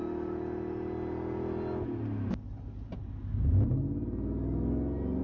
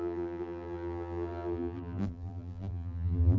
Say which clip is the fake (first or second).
second